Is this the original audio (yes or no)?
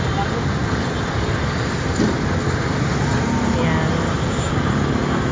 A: yes